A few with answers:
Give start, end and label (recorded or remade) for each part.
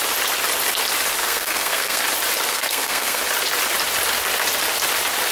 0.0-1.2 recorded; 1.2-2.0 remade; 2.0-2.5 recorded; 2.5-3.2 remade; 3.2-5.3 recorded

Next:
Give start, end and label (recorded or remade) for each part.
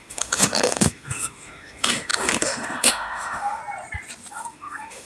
0.0-3.6 remade; 3.6-4.3 recorded; 4.3-5.1 remade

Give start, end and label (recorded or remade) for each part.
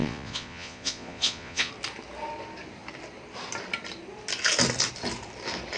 0.0-1.7 remade; 1.7-5.8 recorded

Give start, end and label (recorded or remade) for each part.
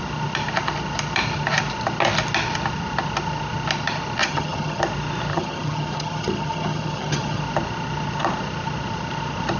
0.0-4.2 recorded; 4.2-4.8 remade; 4.8-5.3 recorded; 5.3-7.4 remade; 7.4-9.6 recorded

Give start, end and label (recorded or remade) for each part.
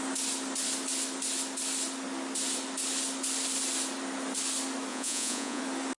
0.0-4.9 recorded; 4.9-5.6 remade; 5.6-6.0 recorded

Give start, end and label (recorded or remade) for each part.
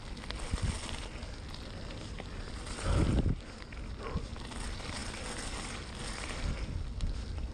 0.0-7.5 recorded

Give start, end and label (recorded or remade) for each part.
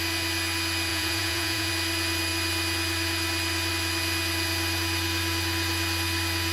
0.0-0.9 recorded; 0.9-1.7 remade; 1.7-6.5 recorded